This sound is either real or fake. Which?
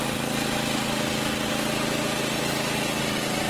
real